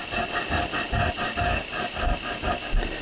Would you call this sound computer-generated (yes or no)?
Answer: no